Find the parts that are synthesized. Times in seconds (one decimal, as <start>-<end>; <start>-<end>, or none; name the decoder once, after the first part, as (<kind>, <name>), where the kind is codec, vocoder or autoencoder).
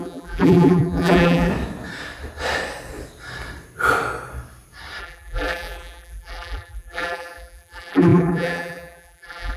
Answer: 0.0-1.5 (vocoder, BigVGAN v2); 5.0-9.6